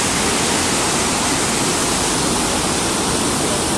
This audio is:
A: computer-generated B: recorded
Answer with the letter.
B